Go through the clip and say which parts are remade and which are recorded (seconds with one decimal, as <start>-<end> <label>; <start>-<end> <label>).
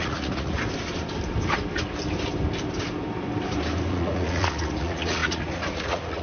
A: 0.0-0.5 remade; 0.5-3.9 recorded; 3.9-6.2 remade